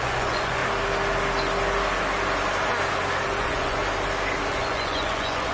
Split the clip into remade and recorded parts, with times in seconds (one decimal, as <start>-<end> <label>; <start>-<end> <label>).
0.0-0.6 remade; 0.6-3.4 recorded; 3.4-3.8 remade; 3.8-4.5 recorded; 4.5-5.5 remade